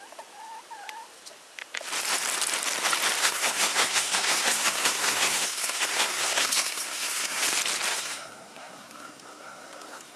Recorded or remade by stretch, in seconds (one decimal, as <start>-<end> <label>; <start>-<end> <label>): 0.0-3.2 recorded; 3.2-7.4 remade; 7.4-7.9 recorded; 7.9-10.2 remade